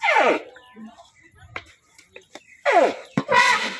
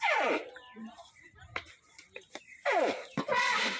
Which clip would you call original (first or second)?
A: first